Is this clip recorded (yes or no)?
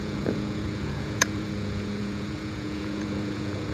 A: no